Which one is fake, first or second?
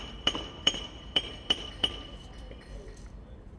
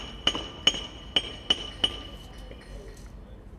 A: first